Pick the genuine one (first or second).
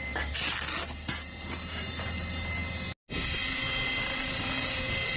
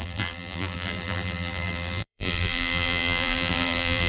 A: first